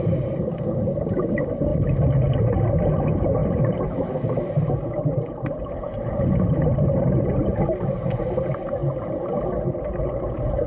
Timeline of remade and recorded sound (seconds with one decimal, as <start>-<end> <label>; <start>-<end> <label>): 0.0-1.7 remade; 1.7-2.4 recorded; 2.4-8.8 remade; 8.8-10.2 recorded; 10.2-10.7 remade